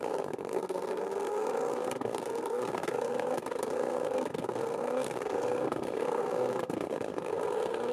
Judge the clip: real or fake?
fake